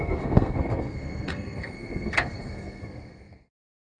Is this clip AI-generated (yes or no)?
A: yes